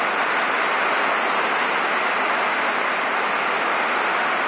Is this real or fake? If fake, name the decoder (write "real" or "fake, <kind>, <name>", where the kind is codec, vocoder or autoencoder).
real